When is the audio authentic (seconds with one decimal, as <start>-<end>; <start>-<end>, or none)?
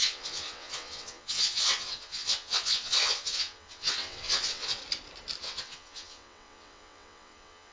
4.8-5.4